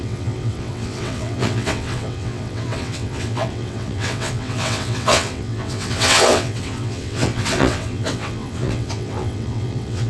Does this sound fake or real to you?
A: fake